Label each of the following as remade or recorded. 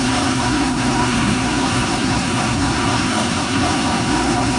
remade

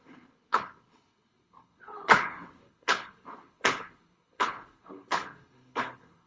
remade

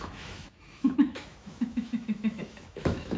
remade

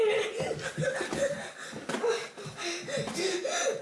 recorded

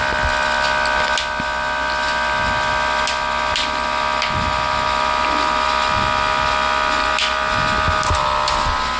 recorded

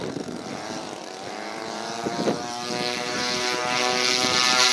recorded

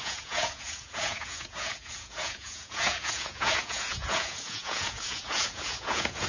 remade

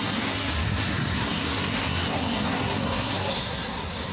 remade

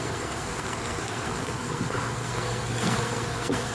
remade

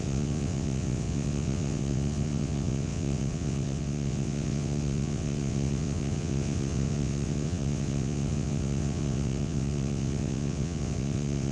remade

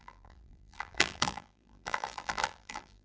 remade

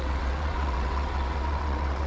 remade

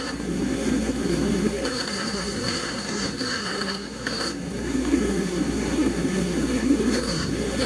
remade